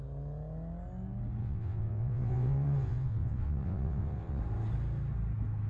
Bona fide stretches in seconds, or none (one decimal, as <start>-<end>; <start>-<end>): 0.0-1.4; 4.4-5.7